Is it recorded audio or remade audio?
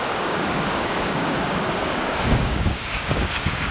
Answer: remade